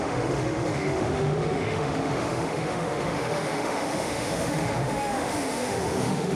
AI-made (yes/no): yes